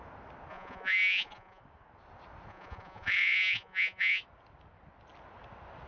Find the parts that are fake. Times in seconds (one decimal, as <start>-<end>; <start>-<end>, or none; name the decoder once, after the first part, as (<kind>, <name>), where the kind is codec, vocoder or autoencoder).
0.5-1.6 (vocoder, Vocos); 2.5-4.2